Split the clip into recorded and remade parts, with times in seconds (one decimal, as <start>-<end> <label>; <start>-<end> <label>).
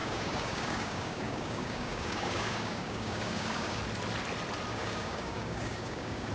0.0-3.8 remade; 3.8-4.7 recorded; 4.7-6.3 remade